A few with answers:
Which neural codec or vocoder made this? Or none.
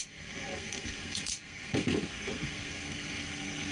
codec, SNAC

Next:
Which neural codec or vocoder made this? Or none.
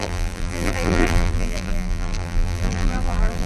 vocoder, BigVGAN v2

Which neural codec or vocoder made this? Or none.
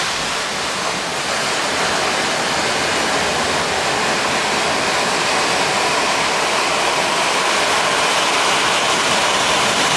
none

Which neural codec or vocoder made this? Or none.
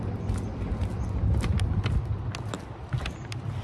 none